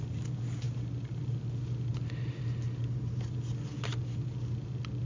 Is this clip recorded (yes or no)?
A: yes